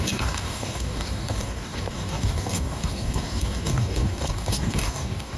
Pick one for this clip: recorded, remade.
remade